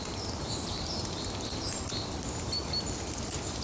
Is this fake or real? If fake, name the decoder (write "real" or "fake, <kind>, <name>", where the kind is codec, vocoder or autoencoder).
real